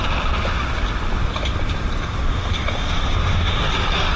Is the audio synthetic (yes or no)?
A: yes